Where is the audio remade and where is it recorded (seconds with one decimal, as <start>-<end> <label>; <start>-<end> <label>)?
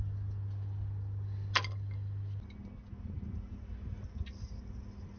0.0-5.2 recorded